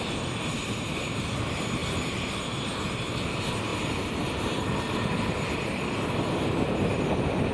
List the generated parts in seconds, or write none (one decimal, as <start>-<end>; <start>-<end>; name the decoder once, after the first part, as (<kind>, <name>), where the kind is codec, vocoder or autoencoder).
3.7-7.5 (vocoder, BigVGAN v2)